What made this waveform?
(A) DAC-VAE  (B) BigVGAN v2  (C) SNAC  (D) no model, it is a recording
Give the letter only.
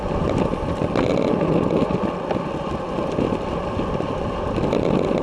D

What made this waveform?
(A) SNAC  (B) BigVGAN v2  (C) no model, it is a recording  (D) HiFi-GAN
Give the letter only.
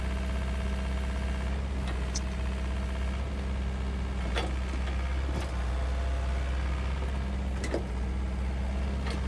C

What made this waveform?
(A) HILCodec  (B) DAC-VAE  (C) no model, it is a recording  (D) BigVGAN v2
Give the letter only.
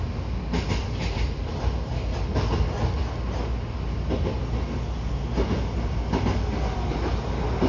C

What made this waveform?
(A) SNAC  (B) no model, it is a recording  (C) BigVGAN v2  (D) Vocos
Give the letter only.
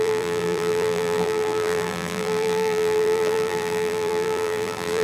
C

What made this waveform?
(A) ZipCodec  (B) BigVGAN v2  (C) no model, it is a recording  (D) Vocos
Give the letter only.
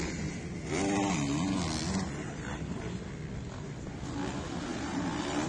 C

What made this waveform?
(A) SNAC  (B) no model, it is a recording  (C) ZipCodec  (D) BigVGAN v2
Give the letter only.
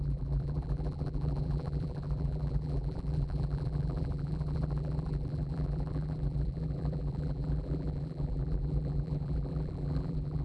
D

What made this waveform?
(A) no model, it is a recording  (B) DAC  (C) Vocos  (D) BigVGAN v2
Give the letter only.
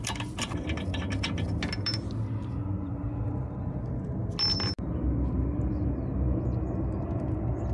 A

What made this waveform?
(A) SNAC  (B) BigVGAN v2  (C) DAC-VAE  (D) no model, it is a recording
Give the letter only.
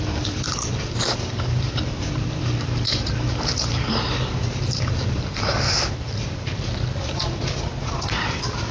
B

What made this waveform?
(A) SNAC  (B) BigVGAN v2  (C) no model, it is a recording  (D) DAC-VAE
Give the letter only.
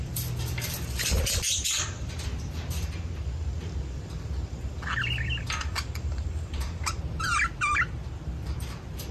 B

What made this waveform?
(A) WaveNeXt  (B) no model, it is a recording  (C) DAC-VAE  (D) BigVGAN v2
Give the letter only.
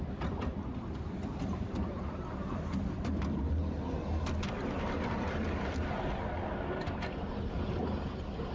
B